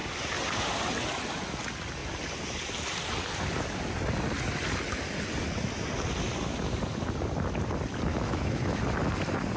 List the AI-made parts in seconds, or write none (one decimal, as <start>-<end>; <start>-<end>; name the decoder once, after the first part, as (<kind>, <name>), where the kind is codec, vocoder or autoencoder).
8.1-8.8 (autoencoder, DAC-VAE)